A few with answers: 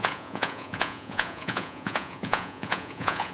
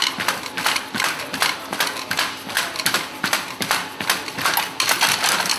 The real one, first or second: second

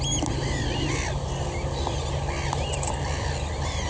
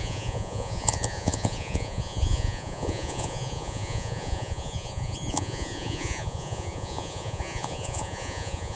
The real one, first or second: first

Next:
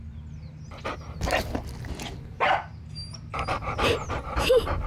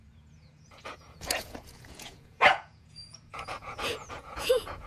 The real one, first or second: first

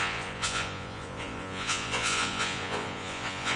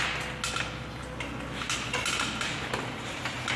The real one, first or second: second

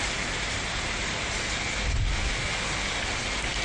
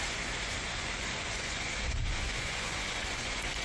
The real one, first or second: first